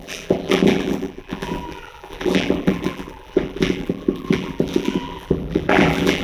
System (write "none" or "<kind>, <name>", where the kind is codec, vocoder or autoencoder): vocoder, BigVGAN v2